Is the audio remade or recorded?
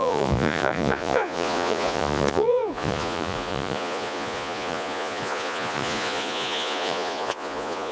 remade